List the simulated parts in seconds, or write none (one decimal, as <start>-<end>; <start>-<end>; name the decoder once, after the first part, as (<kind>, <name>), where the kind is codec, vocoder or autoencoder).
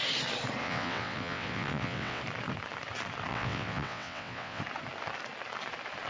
0.6-2.2 (vocoder, WaveNeXt); 3.3-4.6